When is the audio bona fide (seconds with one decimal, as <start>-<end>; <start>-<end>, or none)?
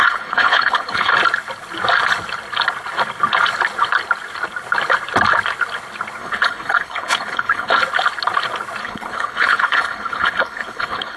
1.1-6.2; 7.8-8.8